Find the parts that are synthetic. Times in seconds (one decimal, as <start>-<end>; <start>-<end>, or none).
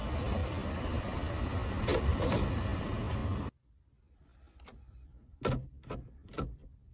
0.4-2.8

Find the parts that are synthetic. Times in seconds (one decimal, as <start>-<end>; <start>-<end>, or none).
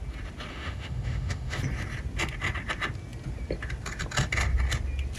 0.5-1.6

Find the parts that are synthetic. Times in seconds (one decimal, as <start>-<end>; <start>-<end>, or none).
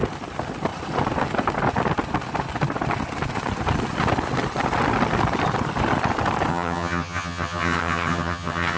6.5-8.8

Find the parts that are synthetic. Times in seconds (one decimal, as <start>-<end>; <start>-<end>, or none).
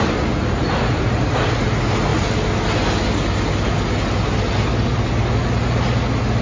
none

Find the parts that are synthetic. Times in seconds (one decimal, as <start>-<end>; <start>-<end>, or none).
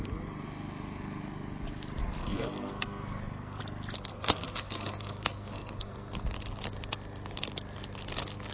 2.2-3.6; 4.1-6.1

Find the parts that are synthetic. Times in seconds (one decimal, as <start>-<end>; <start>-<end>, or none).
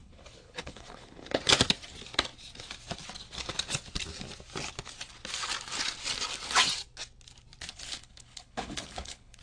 0.0-1.4; 7.7-9.4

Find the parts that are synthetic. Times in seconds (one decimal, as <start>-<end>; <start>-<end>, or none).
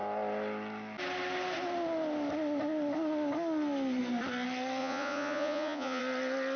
4.8-6.0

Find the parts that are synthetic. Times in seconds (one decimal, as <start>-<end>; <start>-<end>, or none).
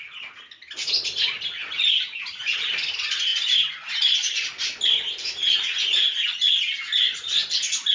none